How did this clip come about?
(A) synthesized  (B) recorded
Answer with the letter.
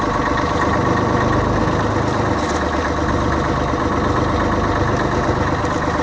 B